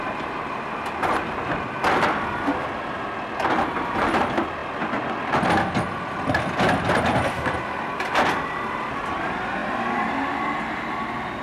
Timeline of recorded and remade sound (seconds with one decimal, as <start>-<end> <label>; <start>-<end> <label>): 0.0-11.4 recorded